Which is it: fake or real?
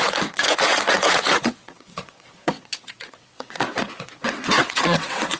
fake